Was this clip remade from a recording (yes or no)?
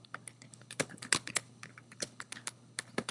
yes